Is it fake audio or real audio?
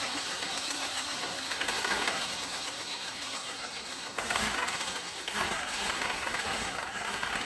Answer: fake